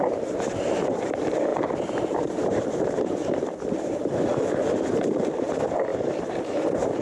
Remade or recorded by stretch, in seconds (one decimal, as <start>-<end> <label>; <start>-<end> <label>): 0.0-3.2 remade; 3.2-3.8 recorded; 3.8-4.3 remade; 4.3-4.9 recorded; 4.9-7.0 remade